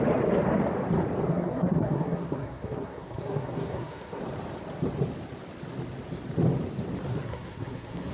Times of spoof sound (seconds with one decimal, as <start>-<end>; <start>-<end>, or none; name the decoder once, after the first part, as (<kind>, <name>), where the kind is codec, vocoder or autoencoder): 1.3-4.2 (codec, SNAC); 7.1-8.1